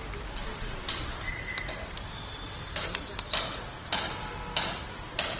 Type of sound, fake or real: real